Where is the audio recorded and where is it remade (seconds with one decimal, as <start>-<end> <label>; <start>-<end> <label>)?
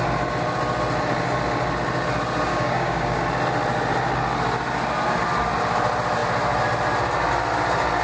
0.0-2.5 recorded; 2.5-3.2 remade; 3.2-8.0 recorded